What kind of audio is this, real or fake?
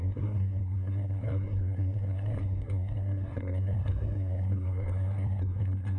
fake